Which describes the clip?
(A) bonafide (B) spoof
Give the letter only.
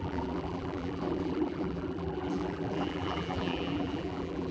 B